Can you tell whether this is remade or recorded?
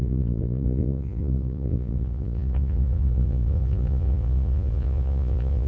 remade